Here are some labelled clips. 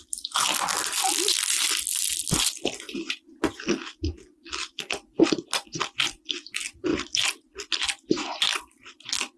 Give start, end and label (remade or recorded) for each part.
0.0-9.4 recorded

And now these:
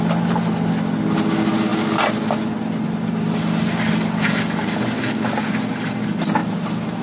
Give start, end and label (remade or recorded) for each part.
0.0-7.0 recorded

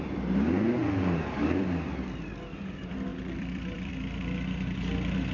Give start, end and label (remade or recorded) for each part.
0.0-3.1 recorded; 3.1-3.9 remade; 3.9-5.3 recorded

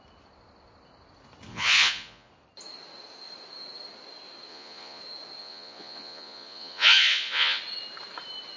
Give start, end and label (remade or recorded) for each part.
0.0-1.5 recorded; 1.5-2.3 remade; 2.3-4.5 recorded; 4.5-5.0 remade; 5.0-5.4 recorded; 5.4-7.6 remade; 7.6-8.6 recorded

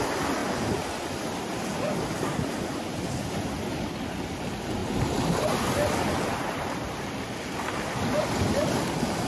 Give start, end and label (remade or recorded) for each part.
0.0-9.3 recorded

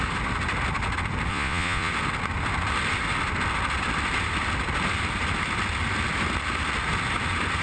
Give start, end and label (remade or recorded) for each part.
0.0-1.3 recorded; 1.3-1.9 remade; 1.9-7.6 recorded

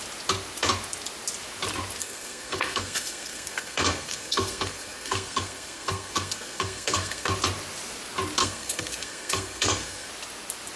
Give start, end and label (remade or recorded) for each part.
0.0-2.0 recorded; 2.0-7.3 remade; 7.3-8.4 recorded; 8.4-10.1 remade; 10.1-10.8 recorded